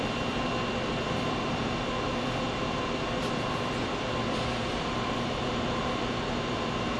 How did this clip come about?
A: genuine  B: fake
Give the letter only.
B